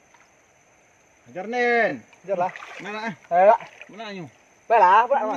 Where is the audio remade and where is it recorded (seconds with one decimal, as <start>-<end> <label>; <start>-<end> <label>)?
0.0-1.9 recorded; 1.9-3.5 remade; 3.5-5.4 recorded